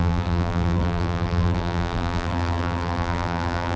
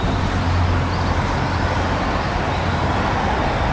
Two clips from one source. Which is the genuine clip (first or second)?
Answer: second